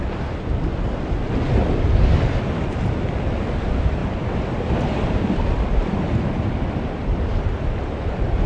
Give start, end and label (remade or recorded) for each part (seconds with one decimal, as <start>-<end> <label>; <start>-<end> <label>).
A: 0.0-8.5 recorded

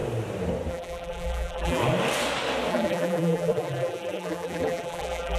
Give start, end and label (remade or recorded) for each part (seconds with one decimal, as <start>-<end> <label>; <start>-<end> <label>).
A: 0.0-0.7 recorded; 0.7-1.8 remade; 1.8-2.7 recorded; 2.7-5.4 remade

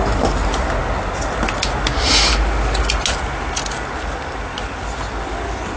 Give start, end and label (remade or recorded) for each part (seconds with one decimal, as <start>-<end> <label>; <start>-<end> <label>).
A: 0.0-5.8 recorded

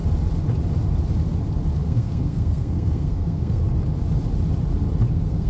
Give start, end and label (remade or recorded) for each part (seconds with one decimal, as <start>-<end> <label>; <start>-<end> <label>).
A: 0.0-1.8 recorded; 1.8-3.6 remade; 3.6-5.1 recorded; 5.1-5.5 remade